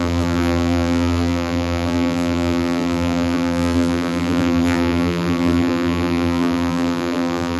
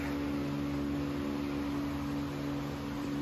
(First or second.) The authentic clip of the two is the second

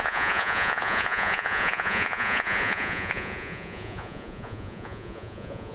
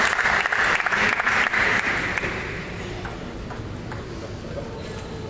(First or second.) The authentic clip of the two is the second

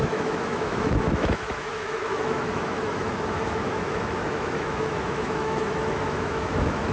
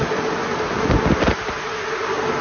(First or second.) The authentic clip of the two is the second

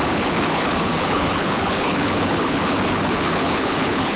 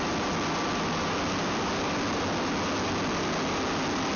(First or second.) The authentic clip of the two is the second